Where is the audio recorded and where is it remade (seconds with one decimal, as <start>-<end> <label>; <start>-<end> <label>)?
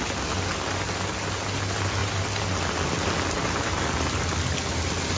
0.0-5.2 recorded